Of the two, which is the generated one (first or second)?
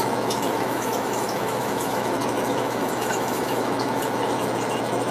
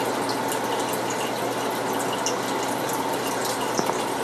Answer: first